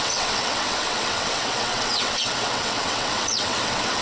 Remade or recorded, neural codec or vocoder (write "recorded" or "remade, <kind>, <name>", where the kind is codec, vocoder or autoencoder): remade, vocoder, WaveNeXt